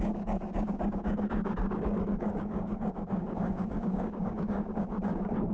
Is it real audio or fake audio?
fake